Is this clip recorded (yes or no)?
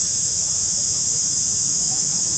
no